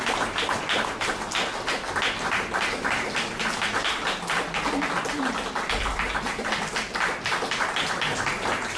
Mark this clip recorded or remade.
recorded